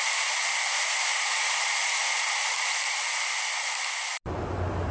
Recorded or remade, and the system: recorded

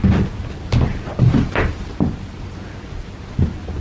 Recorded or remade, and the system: recorded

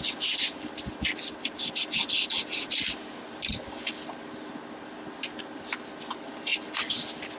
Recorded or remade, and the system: recorded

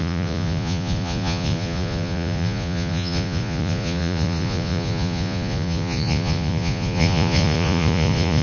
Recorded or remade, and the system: remade, vocoder, Vocos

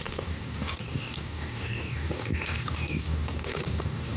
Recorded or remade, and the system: remade, codec, DAC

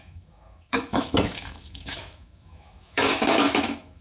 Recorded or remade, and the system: remade, autoencoder, DAC-VAE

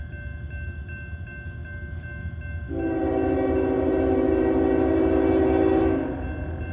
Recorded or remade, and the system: recorded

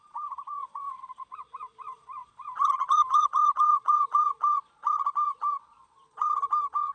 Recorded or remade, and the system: remade, vocoder, Vocos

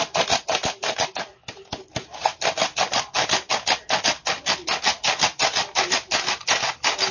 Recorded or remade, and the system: recorded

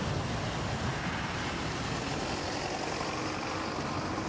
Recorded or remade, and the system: recorded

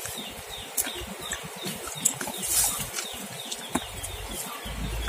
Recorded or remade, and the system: recorded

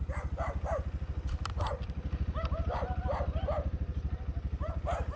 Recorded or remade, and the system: recorded